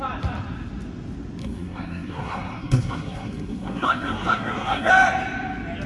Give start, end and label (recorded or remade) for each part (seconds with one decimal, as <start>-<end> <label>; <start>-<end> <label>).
0.0-1.4 recorded; 1.4-4.9 remade; 4.9-5.9 recorded